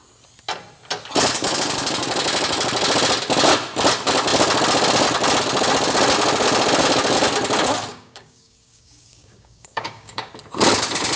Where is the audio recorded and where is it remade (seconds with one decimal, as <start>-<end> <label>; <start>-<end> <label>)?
0.0-7.9 recorded; 7.9-10.3 remade; 10.3-11.2 recorded